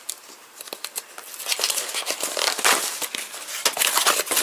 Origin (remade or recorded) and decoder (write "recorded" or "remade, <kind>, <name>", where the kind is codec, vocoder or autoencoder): recorded